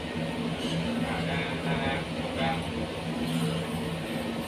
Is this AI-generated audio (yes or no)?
no